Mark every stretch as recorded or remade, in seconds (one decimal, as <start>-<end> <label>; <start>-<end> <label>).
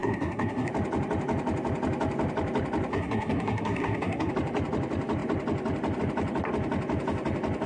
0.0-0.7 remade; 0.7-2.9 recorded; 2.9-4.3 remade; 4.3-7.7 recorded